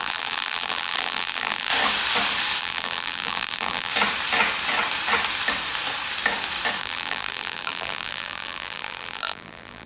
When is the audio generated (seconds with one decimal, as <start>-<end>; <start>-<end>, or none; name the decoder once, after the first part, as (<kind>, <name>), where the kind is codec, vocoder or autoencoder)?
0.0-1.7 (vocoder, BigVGAN v2); 2.6-3.9; 6.8-9.9